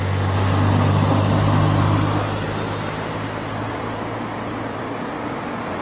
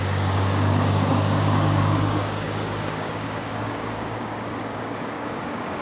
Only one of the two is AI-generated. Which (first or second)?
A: second